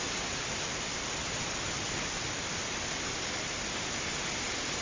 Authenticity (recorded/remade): recorded